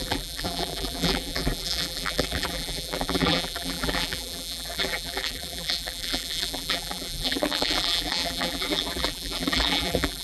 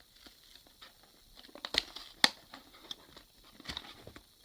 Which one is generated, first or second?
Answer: first